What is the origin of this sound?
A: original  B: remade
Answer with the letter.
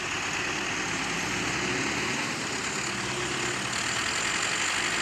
A